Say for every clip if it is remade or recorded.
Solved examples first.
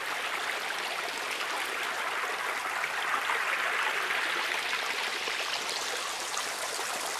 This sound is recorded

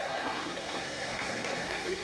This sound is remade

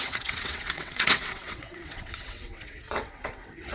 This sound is remade